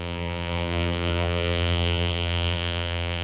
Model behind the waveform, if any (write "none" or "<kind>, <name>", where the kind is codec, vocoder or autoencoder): vocoder, BigVGAN v2